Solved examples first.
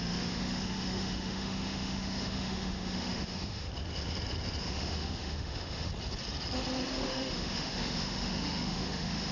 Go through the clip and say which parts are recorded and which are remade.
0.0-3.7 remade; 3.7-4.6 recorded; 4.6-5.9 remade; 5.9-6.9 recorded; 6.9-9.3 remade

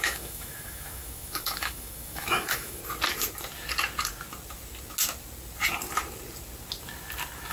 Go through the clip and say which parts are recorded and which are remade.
0.0-2.8 remade; 2.8-7.5 recorded

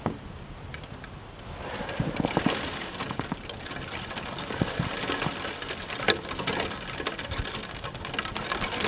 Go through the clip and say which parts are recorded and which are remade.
0.0-8.9 recorded

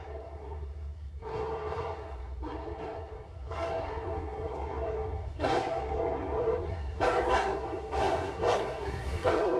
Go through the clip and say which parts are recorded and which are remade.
0.0-9.6 remade

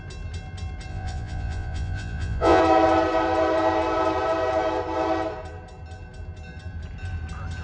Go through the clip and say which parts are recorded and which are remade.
0.0-0.9 recorded; 0.9-2.6 remade; 2.6-7.6 recorded

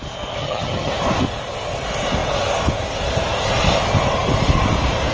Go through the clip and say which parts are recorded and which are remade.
0.0-0.4 recorded; 0.4-0.9 remade; 0.9-5.1 recorded